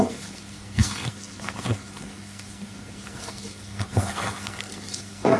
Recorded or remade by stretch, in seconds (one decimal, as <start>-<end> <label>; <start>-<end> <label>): 0.0-5.4 remade